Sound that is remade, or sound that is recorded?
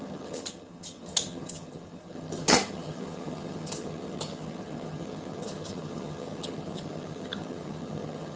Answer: remade